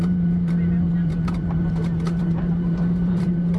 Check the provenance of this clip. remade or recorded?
remade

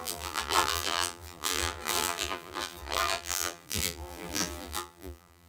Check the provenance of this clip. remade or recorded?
remade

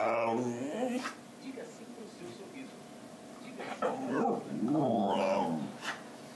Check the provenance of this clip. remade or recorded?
recorded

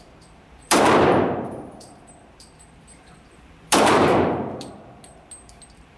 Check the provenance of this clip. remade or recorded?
remade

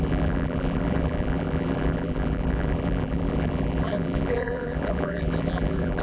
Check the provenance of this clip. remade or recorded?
remade